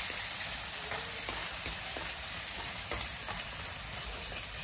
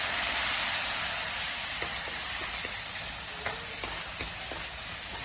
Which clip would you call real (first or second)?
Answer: second